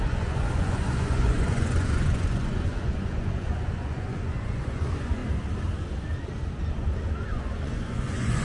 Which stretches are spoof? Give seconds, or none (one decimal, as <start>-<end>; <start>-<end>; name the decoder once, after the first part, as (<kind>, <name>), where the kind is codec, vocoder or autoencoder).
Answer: 0.0-5.2 (vocoder, Vocos); 6.6-8.4